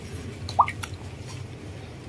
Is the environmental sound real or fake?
real